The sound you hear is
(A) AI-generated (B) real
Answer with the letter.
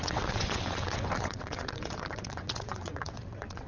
A